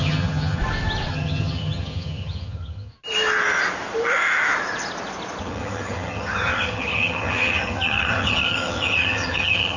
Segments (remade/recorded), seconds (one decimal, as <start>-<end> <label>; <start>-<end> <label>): 0.0-0.6 remade; 0.6-1.1 recorded; 1.1-2.9 remade; 2.9-5.4 recorded; 5.4-9.8 remade